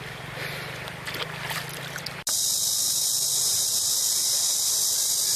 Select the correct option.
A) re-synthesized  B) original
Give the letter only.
B